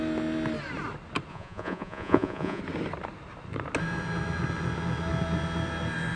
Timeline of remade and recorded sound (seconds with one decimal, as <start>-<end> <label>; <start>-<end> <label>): 0.0-1.3 recorded; 1.3-2.6 remade; 2.6-6.2 recorded